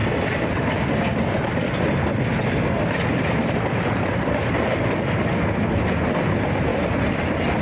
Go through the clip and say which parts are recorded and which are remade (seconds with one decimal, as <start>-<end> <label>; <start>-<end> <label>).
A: 0.0-7.6 recorded